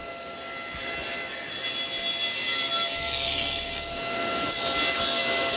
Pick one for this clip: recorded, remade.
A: recorded